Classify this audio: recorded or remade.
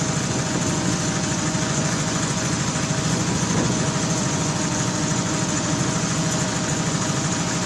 remade